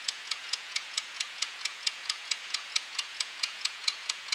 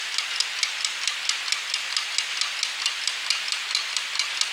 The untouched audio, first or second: second